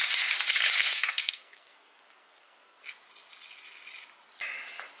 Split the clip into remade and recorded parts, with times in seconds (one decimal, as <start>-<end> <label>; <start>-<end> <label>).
0.0-0.8 recorded; 0.8-2.8 remade; 2.8-5.0 recorded